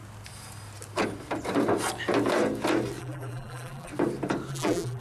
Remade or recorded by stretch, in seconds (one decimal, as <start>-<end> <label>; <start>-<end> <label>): 0.0-3.0 recorded; 3.0-3.9 remade; 3.9-4.5 recorded; 4.5-5.0 remade